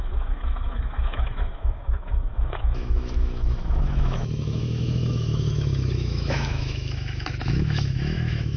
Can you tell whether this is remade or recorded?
remade